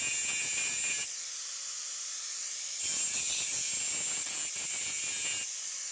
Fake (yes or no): no